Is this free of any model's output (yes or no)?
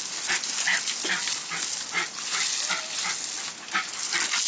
yes